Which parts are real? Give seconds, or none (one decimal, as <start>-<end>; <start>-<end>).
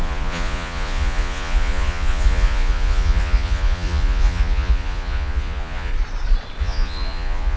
5.9-6.6